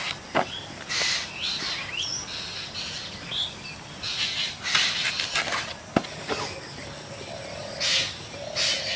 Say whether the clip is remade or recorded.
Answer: recorded